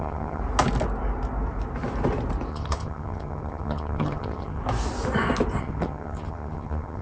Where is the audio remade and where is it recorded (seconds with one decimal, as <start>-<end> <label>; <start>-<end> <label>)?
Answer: 0.0-0.4 remade; 0.4-2.5 recorded; 2.5-4.6 remade; 4.6-5.6 recorded; 5.6-7.0 remade